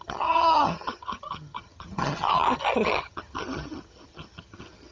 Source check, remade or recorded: remade